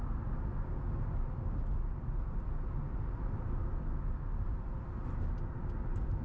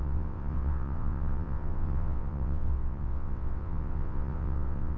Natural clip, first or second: first